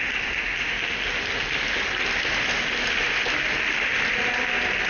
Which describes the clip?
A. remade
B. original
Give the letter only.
B